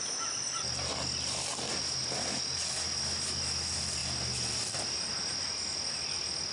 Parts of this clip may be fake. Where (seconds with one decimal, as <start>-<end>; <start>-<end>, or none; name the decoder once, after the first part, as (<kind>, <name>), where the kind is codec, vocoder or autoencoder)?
none